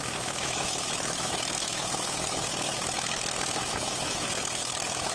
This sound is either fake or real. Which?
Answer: fake